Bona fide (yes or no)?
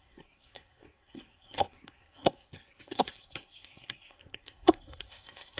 no